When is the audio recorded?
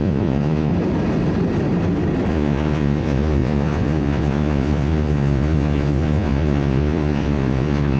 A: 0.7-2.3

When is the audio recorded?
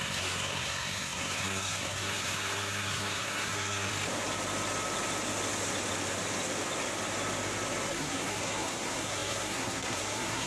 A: 3.9-7.9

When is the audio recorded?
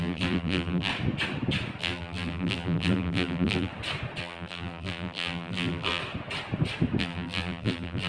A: 0.9-1.8; 3.7-4.2; 6.0-7.0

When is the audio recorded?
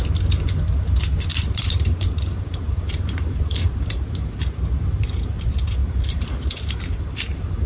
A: 0.0-1.3; 4.4-5.8; 6.8-7.7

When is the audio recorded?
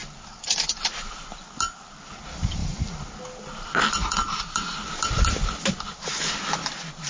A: 0.0-7.1